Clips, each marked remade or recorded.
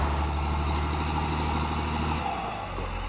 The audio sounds recorded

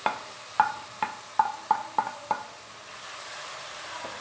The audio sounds recorded